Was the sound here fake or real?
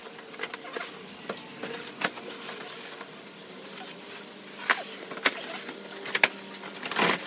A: real